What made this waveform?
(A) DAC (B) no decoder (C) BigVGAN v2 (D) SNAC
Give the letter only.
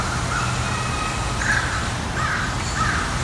B